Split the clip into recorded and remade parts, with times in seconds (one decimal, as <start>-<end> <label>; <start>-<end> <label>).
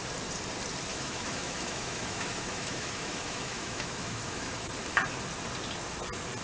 0.0-0.9 recorded; 0.9-4.7 remade; 4.7-6.4 recorded